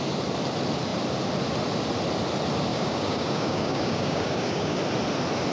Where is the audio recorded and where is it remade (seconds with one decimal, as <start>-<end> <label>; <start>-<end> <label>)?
0.0-2.7 recorded; 2.7-4.8 remade; 4.8-5.5 recorded